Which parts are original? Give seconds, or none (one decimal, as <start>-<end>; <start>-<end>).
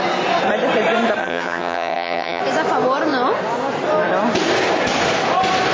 0.0-1.2; 2.4-5.7